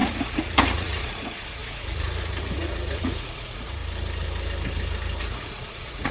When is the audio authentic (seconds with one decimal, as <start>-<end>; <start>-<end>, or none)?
3.8-5.2